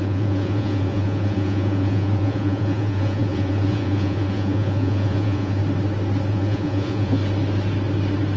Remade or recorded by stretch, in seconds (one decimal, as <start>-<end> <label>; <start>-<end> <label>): 0.0-5.6 remade; 5.6-6.3 recorded; 6.3-7.2 remade; 7.2-8.4 recorded